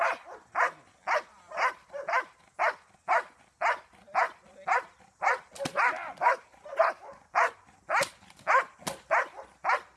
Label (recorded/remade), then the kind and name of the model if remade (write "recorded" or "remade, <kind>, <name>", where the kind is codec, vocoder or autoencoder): recorded